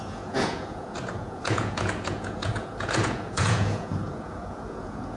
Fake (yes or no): yes